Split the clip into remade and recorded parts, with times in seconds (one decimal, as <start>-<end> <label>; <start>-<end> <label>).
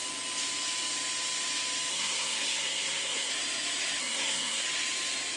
0.0-1.9 recorded; 1.9-3.3 remade; 3.3-4.0 recorded; 4.0-4.6 remade; 4.6-5.4 recorded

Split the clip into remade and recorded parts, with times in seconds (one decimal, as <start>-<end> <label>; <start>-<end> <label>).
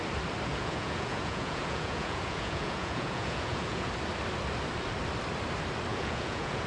0.0-0.5 recorded; 0.5-3.9 remade; 3.9-5.9 recorded; 5.9-6.7 remade